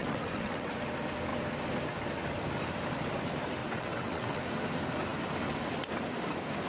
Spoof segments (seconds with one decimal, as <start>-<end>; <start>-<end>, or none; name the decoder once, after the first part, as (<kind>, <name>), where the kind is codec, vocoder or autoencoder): 0.0-0.7 (vocoder, WaveNeXt); 3.6-4.4